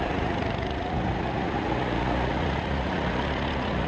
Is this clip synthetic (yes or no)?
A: yes